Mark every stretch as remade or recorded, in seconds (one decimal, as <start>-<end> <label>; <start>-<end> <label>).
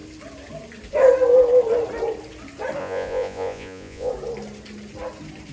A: 0.0-2.8 recorded; 2.8-4.1 remade; 4.1-5.5 recorded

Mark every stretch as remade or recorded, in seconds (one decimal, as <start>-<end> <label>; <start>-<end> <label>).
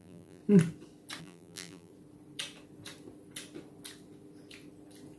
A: 0.0-0.4 remade; 0.4-1.2 recorded; 1.2-1.9 remade; 1.9-5.2 recorded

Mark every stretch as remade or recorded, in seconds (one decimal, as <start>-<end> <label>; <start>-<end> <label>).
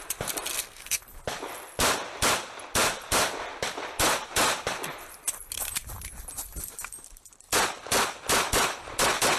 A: 0.0-0.5 recorded; 0.5-1.0 remade; 1.0-9.4 recorded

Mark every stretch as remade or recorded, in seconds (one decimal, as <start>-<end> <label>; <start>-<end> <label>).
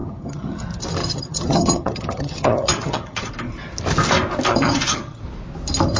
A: 0.0-0.6 remade; 0.6-1.0 recorded; 1.0-3.3 remade; 3.3-4.5 recorded; 4.5-5.2 remade; 5.2-6.0 recorded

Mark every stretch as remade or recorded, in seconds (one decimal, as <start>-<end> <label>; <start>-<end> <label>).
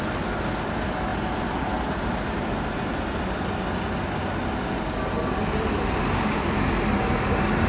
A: 0.0-7.7 recorded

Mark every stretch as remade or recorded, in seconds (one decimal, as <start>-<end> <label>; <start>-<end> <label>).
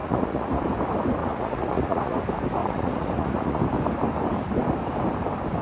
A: 0.0-0.6 remade; 0.6-1.2 recorded; 1.2-2.2 remade; 2.2-2.6 recorded; 2.6-3.6 remade; 3.6-5.6 recorded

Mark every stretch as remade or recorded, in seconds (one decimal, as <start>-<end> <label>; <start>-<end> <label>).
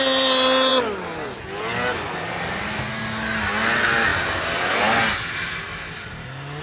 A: 0.0-6.6 recorded